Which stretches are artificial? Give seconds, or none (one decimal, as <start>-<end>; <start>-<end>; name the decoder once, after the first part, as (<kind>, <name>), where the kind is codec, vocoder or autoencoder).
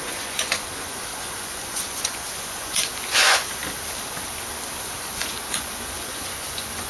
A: 0.0-3.6 (vocoder, Vocos); 4.8-6.9